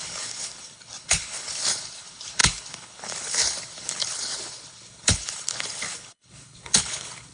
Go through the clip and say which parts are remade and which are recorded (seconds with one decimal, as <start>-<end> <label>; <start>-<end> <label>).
0.0-7.3 remade